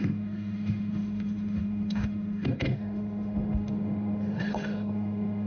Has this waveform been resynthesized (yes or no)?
yes